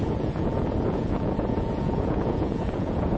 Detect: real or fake fake